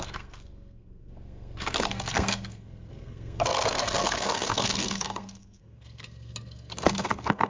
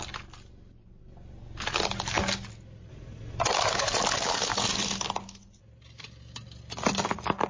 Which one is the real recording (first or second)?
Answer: second